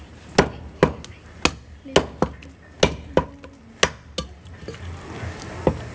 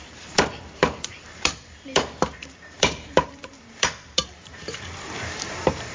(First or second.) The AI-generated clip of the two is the second